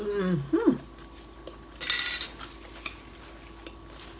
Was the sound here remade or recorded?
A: recorded